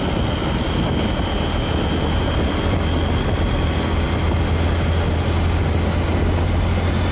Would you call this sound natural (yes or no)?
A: yes